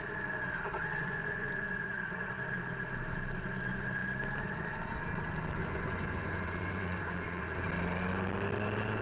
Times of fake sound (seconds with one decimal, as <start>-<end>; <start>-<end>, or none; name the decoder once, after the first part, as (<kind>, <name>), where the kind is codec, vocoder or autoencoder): 0.9-2.3 (vocoder, Vocos); 5.6-7.4